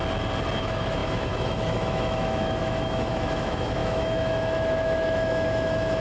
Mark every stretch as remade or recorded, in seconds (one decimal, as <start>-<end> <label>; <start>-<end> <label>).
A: 0.0-0.6 recorded; 0.6-6.0 remade